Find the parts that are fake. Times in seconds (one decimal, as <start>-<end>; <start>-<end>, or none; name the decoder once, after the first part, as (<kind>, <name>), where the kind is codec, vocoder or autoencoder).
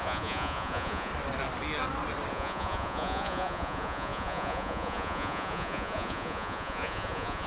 0.0-1.1 (vocoder, Vocos); 2.3-7.5